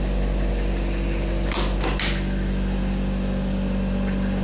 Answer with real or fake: real